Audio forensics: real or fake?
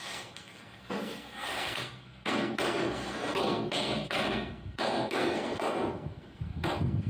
fake